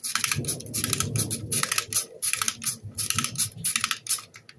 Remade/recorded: recorded